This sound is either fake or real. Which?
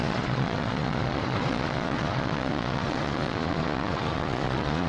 fake